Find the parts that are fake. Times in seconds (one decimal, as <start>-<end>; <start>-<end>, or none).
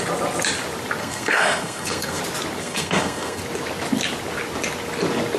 1.0-2.2; 2.6-3.4